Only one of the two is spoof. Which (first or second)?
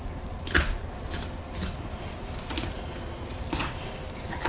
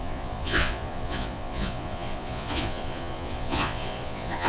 second